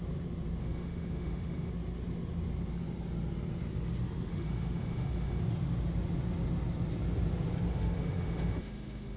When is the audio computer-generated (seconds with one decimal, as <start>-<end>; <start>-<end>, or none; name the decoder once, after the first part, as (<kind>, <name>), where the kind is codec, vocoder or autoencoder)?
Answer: 0.6-1.7 (autoencoder, DAC-VAE); 4.3-5.4; 7.7-9.2